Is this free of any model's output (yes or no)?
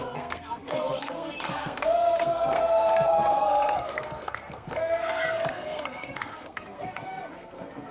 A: no